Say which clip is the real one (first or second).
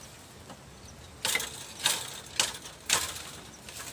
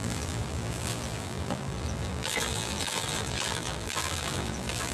first